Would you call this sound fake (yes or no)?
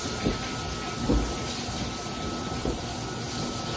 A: no